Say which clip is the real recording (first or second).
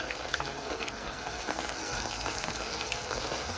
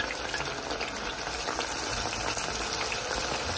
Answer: second